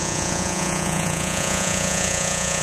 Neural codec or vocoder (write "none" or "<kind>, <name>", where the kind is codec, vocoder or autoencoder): vocoder, Vocos